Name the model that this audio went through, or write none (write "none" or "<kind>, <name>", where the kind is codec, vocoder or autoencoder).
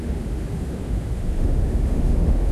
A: autoencoder, DAC-VAE